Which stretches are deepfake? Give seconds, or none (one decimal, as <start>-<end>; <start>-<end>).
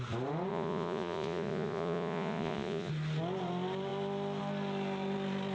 0.5-2.9